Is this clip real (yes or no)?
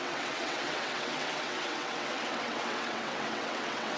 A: no